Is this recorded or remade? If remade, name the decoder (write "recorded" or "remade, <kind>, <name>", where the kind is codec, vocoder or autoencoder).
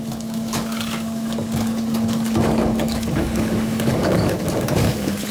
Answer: remade, codec, DAC